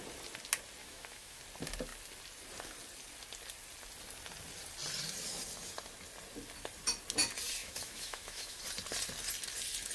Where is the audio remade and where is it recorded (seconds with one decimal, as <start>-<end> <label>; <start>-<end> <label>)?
0.0-0.8 recorded; 0.8-1.4 remade; 1.4-7.6 recorded; 7.6-8.6 remade; 8.6-9.9 recorded